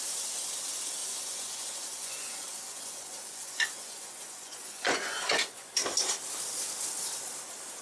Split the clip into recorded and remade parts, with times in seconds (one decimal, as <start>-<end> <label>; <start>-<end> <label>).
0.0-1.0 recorded; 1.0-5.7 remade; 5.7-7.8 recorded